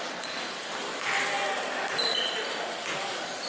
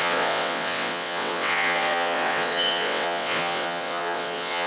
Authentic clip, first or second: first